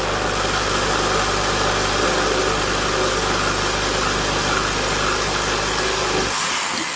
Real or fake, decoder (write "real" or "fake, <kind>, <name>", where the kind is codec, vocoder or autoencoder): real